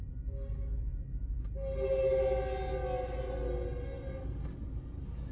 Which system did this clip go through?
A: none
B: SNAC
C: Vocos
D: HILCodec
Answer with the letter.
A